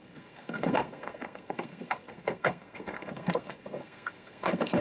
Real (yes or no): no